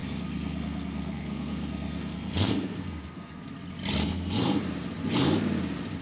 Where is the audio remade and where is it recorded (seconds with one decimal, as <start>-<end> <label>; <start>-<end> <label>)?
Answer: 0.0-3.4 remade; 3.4-4.0 recorded; 4.0-4.6 remade; 4.6-6.0 recorded